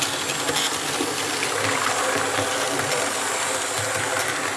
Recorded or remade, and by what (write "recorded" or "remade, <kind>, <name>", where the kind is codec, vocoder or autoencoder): recorded